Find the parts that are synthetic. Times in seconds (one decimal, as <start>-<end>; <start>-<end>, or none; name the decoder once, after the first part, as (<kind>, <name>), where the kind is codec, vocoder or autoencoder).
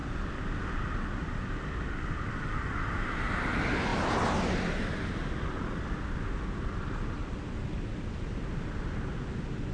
none